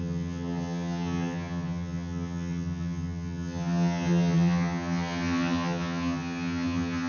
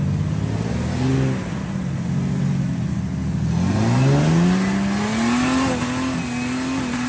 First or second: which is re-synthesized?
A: first